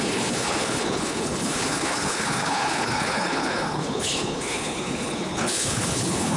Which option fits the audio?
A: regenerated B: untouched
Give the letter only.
A